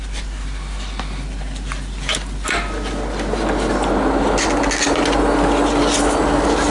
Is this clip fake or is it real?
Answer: real